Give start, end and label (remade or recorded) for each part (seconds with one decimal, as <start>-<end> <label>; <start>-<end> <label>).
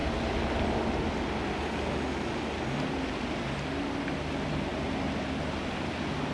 0.0-6.3 recorded